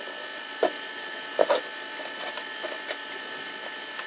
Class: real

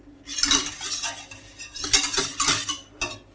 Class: real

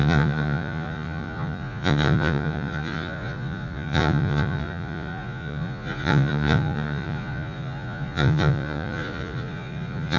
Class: fake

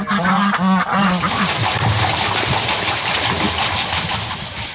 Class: real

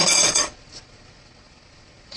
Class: fake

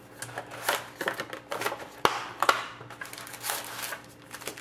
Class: real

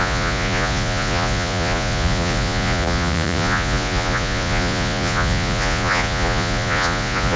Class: fake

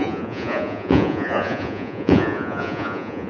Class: fake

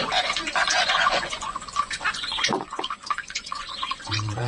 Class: fake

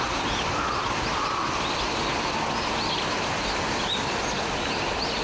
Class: real